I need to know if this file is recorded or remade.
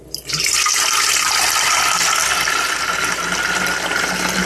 recorded